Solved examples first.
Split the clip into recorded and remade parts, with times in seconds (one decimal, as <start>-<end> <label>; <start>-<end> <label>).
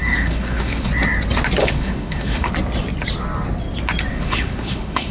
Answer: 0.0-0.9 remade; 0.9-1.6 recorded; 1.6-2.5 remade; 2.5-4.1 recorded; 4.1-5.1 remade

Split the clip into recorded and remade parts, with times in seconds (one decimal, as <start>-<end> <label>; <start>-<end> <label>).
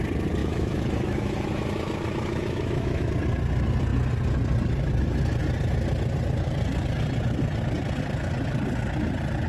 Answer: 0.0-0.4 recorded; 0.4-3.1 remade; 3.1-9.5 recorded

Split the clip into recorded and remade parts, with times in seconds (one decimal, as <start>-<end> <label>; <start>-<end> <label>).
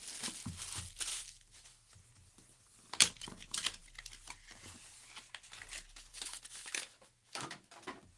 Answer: 0.0-1.1 recorded; 1.1-1.9 remade; 1.9-6.1 recorded; 6.1-7.7 remade; 7.7-8.2 recorded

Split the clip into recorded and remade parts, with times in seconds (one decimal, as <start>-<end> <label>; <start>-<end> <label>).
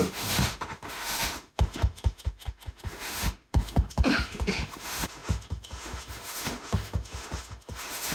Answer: 0.0-8.1 remade